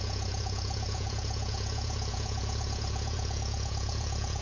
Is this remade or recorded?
remade